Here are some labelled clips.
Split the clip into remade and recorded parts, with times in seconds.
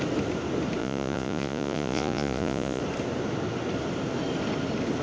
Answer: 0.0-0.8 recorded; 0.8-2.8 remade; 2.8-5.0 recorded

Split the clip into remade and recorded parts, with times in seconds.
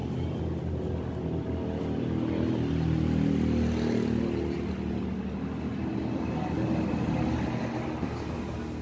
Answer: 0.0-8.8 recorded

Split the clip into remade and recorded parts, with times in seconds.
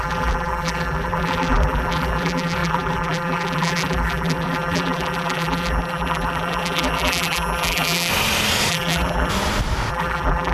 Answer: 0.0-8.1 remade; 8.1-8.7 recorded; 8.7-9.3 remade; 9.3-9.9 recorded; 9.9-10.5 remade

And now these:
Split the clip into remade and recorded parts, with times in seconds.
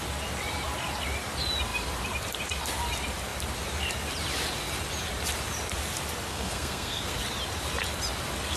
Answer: 0.0-6.3 recorded; 6.3-7.2 remade; 7.2-8.6 recorded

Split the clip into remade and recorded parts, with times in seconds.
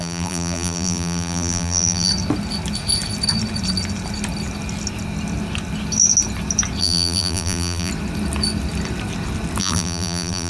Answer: 0.0-2.1 remade; 2.1-6.8 recorded; 6.8-7.9 remade; 7.9-9.6 recorded; 9.6-10.5 remade